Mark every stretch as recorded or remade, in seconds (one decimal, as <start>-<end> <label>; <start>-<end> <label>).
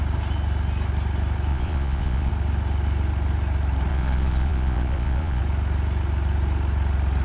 0.0-1.5 recorded; 1.5-2.3 remade; 2.3-3.9 recorded; 3.9-5.4 remade; 5.4-7.2 recorded